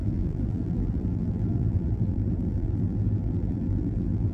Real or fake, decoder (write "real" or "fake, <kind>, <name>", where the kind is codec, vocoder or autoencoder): fake, vocoder, BigVGAN v2